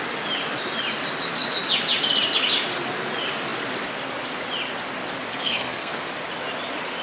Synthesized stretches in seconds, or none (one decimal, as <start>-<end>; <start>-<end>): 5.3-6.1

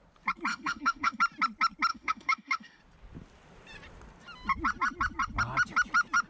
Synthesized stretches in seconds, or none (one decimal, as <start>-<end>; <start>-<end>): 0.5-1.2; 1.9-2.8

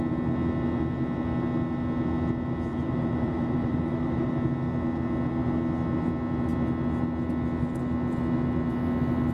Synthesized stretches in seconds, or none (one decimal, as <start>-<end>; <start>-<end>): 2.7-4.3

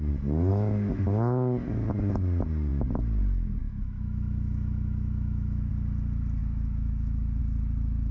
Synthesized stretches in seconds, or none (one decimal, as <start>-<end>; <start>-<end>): 0.5-1.0; 3.6-5.7; 6.4-7.4

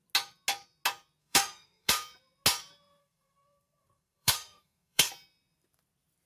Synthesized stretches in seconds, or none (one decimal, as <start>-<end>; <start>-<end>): 1.2-1.9; 3.0-5.1